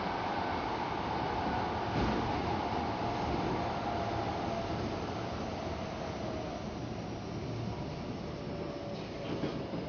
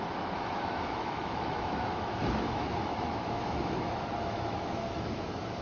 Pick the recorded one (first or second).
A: first